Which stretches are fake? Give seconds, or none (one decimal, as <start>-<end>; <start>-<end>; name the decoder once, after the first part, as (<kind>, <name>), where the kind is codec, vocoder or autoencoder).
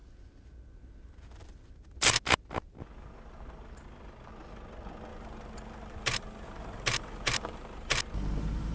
5.1-8.0 (vocoder, BigVGAN v2)